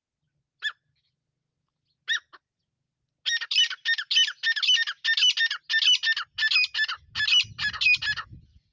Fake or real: real